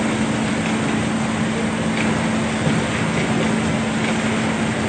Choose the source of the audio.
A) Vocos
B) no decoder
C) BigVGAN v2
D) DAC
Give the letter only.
B